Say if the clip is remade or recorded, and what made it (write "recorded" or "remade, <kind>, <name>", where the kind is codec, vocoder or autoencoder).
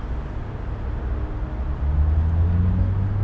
recorded